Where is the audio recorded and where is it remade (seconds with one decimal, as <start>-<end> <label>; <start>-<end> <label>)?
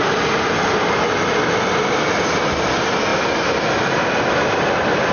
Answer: 0.0-5.1 recorded